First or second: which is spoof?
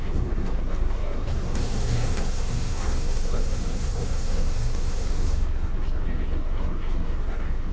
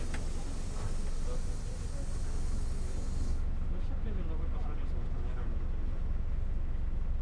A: first